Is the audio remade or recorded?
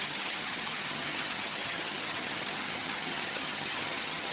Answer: remade